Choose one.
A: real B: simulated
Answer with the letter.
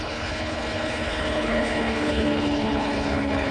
B